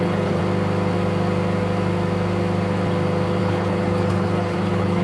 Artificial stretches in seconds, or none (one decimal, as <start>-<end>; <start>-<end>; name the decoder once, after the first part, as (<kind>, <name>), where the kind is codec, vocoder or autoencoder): 0.0-0.4 (codec, HILCodec); 3.4-5.0